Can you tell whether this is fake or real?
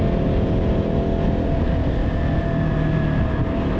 real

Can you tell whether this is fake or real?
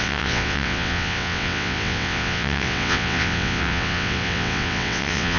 fake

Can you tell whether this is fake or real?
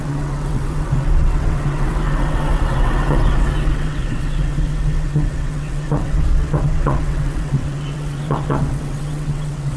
fake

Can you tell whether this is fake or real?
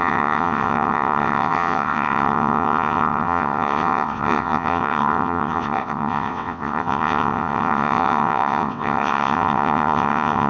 fake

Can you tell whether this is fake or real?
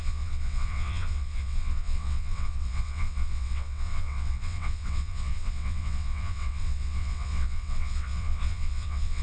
fake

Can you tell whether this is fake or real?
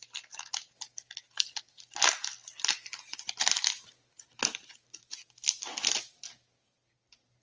real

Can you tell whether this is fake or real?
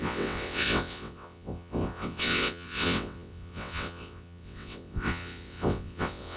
fake